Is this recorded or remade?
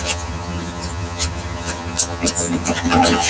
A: remade